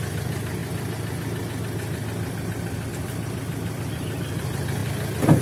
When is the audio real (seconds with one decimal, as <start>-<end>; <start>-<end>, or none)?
0.6-2.9; 4.8-5.4